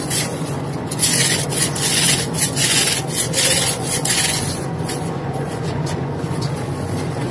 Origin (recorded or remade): remade